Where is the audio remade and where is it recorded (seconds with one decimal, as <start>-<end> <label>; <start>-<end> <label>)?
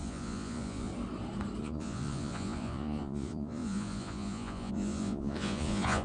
0.0-0.9 remade; 0.9-1.6 recorded; 1.6-6.0 remade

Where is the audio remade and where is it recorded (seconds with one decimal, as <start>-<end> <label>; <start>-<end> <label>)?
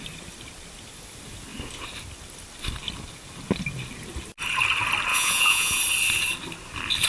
0.0-5.1 recorded; 5.1-5.8 remade; 5.8-7.1 recorded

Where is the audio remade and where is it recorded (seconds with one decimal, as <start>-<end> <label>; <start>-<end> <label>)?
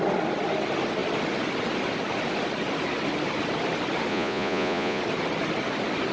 0.0-4.1 recorded; 4.1-5.0 remade; 5.0-6.1 recorded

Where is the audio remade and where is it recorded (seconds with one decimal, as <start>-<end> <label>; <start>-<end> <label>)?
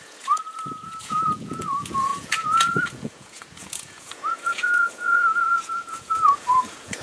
0.0-7.0 remade